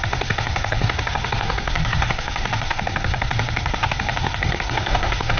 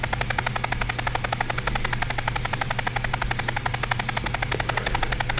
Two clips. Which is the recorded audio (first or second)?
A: second